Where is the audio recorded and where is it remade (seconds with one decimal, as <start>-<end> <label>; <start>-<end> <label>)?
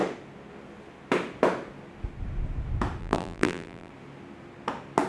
0.0-3.0 recorded; 3.0-3.9 remade; 3.9-5.1 recorded